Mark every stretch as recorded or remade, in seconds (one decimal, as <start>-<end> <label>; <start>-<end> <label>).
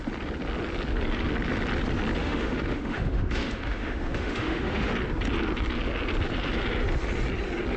0.0-2.2 recorded; 2.2-4.9 remade; 4.9-7.8 recorded